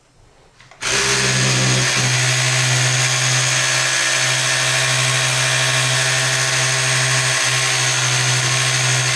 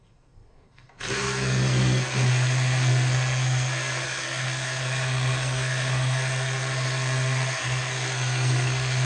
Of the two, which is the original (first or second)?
first